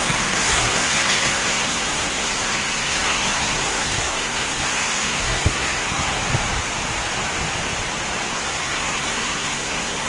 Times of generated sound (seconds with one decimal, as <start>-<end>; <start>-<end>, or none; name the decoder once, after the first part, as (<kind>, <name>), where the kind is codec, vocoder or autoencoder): 0.0-6.2 (codec, SNAC); 8.3-10.1